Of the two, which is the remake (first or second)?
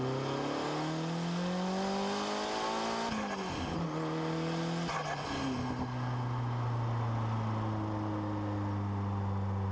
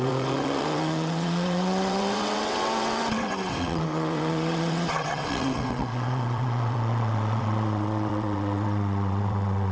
second